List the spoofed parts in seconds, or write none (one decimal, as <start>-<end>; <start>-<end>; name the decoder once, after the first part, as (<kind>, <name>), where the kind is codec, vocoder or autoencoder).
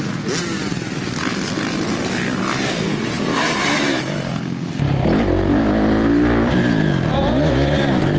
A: 3.3-4.0 (vocoder, BigVGAN v2)